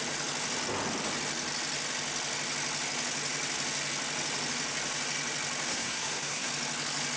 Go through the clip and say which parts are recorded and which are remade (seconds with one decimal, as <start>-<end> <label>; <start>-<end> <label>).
0.0-5.7 recorded; 5.7-6.5 remade; 6.5-7.2 recorded

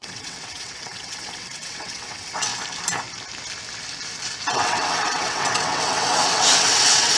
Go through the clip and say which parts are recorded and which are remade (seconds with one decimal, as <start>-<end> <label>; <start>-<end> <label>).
0.0-2.5 remade; 2.5-4.5 recorded; 4.5-7.2 remade

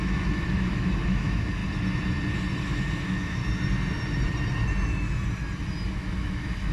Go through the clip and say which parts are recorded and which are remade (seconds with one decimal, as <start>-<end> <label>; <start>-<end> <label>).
0.0-1.6 remade; 1.6-2.6 recorded; 2.6-3.4 remade; 3.4-5.9 recorded; 5.9-6.7 remade

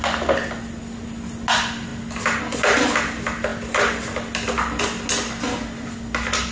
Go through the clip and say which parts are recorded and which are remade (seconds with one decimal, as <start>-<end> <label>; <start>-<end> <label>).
0.0-6.5 recorded

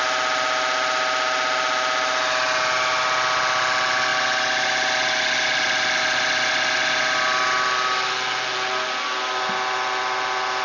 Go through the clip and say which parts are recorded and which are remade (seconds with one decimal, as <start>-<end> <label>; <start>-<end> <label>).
0.0-10.6 recorded

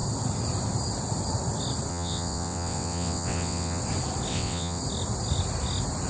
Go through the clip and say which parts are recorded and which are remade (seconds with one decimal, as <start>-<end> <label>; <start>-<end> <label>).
0.0-1.9 recorded; 1.9-3.8 remade; 3.8-4.3 recorded; 4.3-4.8 remade; 4.8-6.1 recorded

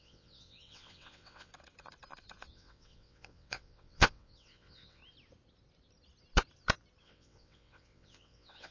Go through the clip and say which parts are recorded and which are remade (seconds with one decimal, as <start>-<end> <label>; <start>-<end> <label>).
0.0-1.5 remade; 1.5-2.5 recorded; 2.5-5.0 remade; 5.0-7.0 recorded; 7.0-8.7 remade

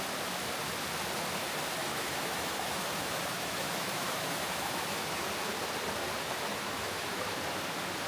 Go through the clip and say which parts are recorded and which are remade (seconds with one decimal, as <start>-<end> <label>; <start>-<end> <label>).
0.0-1.8 recorded; 1.8-5.3 remade; 5.3-6.5 recorded; 6.5-7.2 remade; 7.2-8.1 recorded